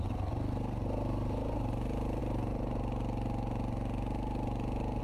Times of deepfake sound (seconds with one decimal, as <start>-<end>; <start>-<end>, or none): none